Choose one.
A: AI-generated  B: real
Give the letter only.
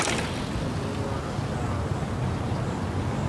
B